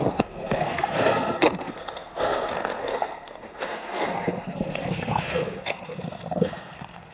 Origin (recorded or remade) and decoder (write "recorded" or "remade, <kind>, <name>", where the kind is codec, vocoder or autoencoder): remade, codec, SNAC